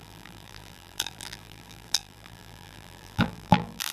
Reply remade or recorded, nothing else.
remade